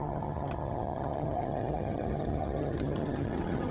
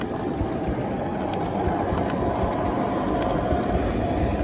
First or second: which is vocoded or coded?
first